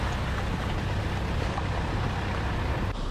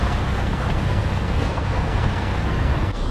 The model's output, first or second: second